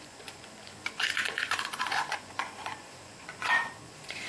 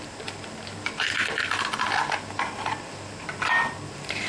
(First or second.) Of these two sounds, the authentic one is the second